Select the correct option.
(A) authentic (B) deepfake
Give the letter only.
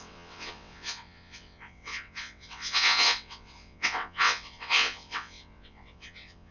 B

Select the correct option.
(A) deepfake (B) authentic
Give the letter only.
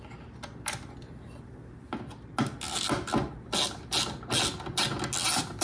B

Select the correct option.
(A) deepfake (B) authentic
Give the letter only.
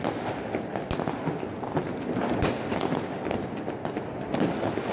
B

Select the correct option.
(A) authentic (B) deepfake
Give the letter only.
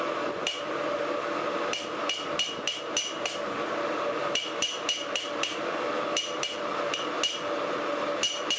A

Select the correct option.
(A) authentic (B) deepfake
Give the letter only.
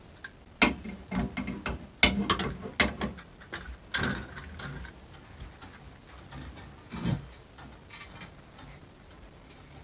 A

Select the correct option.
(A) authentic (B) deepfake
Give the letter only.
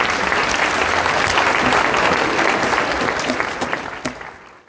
A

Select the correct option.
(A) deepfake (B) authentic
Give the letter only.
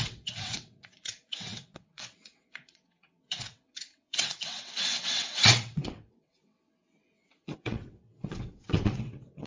A